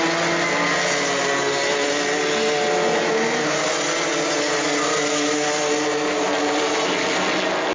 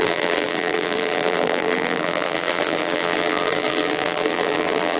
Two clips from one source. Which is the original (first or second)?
first